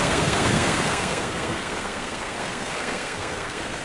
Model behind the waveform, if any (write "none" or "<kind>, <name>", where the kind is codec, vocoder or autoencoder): codec, SNAC